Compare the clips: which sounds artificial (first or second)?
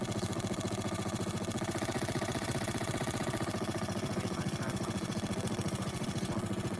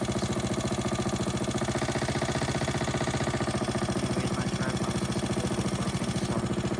first